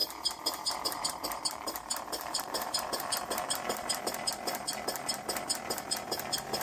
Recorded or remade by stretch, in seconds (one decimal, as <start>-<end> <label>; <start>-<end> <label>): 0.0-4.0 remade; 4.0-6.6 recorded